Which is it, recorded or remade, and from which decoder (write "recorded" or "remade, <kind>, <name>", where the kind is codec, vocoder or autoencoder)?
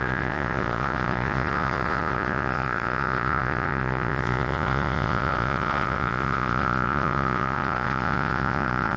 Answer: remade, vocoder, Vocos